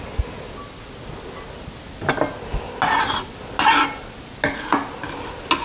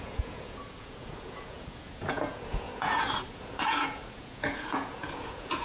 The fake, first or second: second